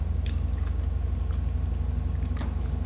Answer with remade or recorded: recorded